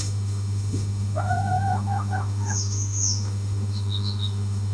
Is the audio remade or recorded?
remade